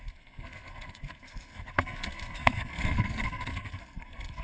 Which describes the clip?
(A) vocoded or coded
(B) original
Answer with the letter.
A